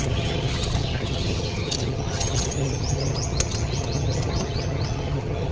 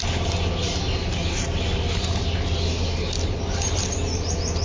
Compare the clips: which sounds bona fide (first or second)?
second